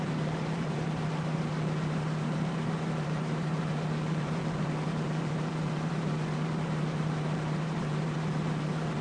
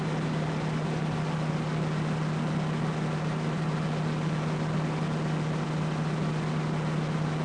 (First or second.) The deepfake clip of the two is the first